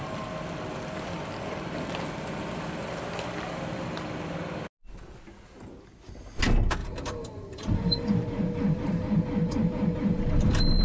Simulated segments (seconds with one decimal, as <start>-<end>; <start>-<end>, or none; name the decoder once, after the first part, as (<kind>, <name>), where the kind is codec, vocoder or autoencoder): 6.8-10.8 (vocoder, BigVGAN v2)